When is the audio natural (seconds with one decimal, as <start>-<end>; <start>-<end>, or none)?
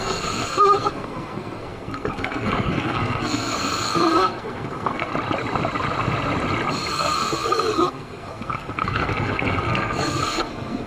5.1-6.9